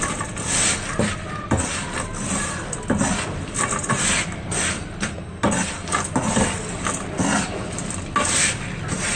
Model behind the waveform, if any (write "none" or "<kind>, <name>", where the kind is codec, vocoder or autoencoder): none